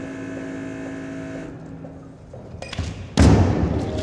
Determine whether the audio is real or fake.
real